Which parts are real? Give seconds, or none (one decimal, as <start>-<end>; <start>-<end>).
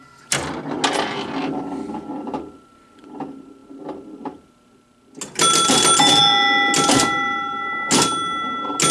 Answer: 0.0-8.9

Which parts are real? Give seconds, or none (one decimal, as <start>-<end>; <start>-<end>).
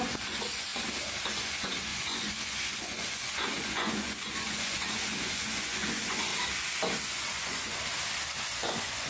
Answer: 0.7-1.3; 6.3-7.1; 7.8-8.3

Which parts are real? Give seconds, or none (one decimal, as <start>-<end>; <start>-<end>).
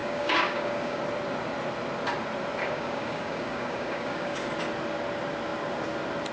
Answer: 1.0-2.6; 4.5-6.3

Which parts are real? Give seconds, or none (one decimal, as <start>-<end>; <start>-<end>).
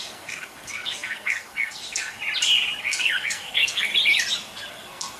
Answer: 2.2-2.8; 3.9-4.7